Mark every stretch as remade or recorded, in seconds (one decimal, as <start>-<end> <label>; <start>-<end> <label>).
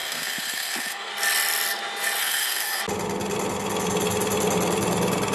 0.0-1.1 remade; 1.1-2.2 recorded; 2.2-2.8 remade; 2.8-5.3 recorded